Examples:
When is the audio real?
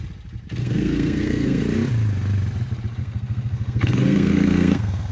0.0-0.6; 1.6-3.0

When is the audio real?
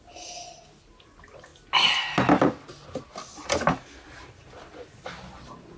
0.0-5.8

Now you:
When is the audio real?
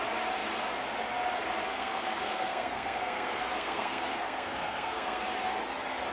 0.0-1.7; 5.2-6.1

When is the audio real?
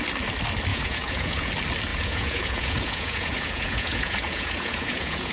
0.0-0.7; 1.5-1.9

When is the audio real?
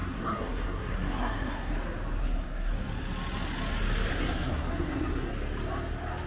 1.7-2.2; 2.7-4.1; 5.3-6.3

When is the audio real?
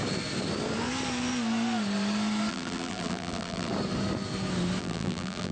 0.0-2.5; 3.7-4.8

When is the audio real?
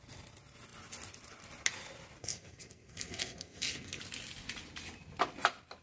0.0-2.2; 4.0-5.8